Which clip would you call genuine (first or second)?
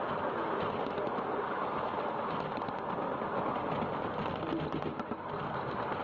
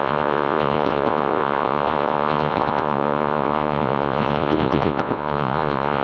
first